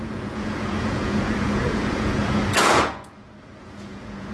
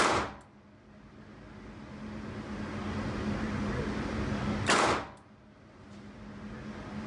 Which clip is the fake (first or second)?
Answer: first